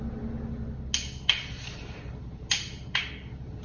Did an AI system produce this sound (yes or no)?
no